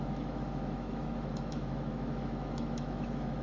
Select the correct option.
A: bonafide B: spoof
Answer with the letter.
B